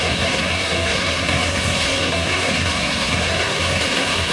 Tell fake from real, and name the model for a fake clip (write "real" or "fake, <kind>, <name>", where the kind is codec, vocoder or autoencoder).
fake, codec, SNAC